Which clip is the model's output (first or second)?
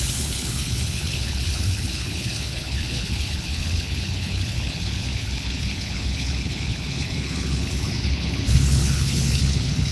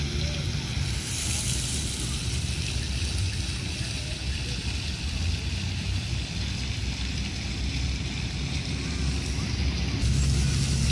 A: first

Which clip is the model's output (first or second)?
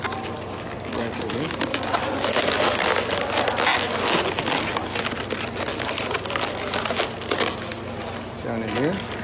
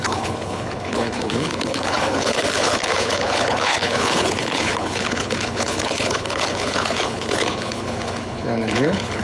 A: second